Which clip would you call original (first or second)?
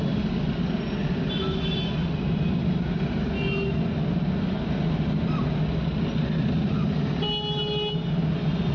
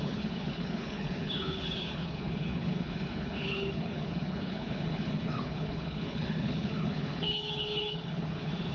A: first